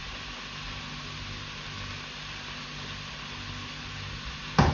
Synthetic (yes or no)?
no